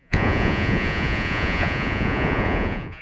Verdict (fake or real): fake